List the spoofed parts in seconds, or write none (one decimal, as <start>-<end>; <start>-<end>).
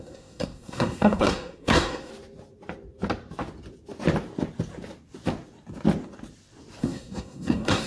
0.0-2.1; 6.8-7.9